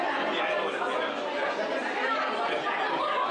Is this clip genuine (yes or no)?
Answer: yes